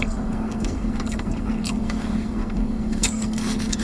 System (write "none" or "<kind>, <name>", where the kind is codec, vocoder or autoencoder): codec, SNAC